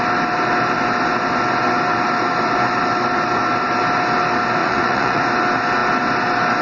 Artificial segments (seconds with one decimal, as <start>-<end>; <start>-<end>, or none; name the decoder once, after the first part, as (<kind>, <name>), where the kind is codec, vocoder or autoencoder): 4.6-5.2 (vocoder, Vocos)